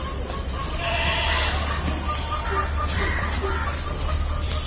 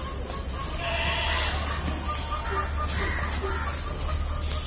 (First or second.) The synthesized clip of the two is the first